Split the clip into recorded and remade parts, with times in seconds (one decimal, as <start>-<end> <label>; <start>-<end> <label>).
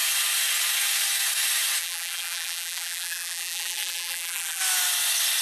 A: 0.0-1.8 recorded; 1.8-4.6 remade; 4.6-5.4 recorded